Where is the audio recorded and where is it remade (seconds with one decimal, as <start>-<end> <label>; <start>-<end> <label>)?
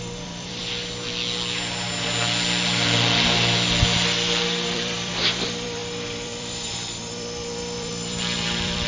0.0-0.6 remade; 0.6-4.7 recorded; 4.7-8.9 remade